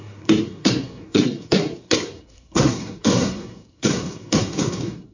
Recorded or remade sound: remade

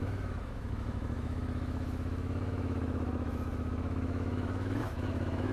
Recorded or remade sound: remade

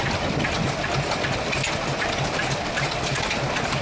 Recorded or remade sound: recorded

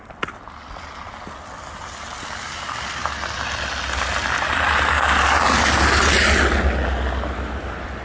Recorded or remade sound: recorded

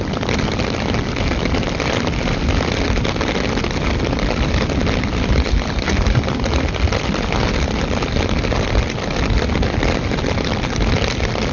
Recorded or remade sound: recorded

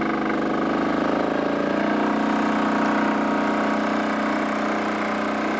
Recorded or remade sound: recorded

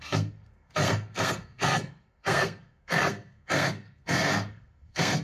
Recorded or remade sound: remade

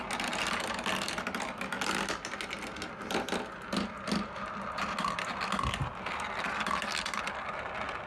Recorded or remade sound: recorded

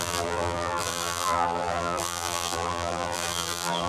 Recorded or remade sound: remade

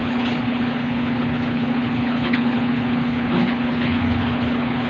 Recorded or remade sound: remade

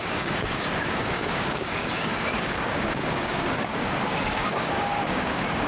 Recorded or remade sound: remade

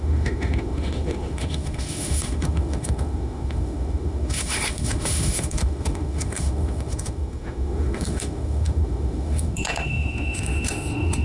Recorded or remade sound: remade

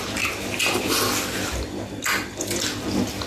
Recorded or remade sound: recorded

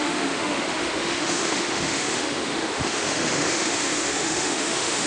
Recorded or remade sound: remade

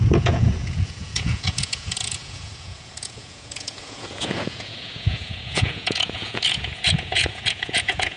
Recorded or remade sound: remade